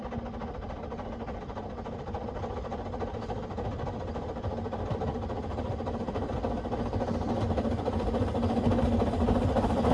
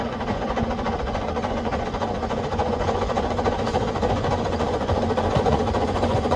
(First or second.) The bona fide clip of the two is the first